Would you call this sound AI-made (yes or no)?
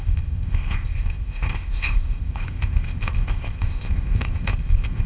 yes